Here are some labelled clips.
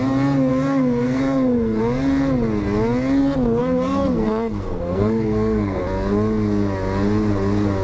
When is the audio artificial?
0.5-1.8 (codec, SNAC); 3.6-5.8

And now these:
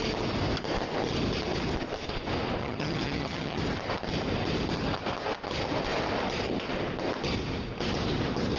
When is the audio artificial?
2.6-3.6 (vocoder, HiFi-GAN)

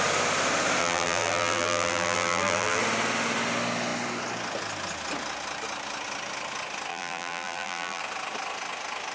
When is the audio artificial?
0.8-2.8 (vocoder, BigVGAN v2); 6.9-8.0

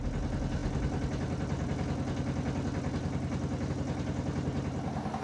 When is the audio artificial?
none

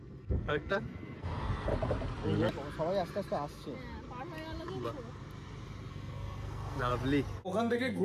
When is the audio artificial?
0.0-1.7 (codec, SNAC); 5.9-6.9; 7.6-8.0

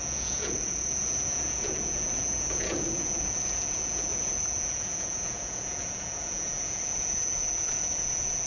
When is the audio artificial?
0.0-8.5 (vocoder, Vocos)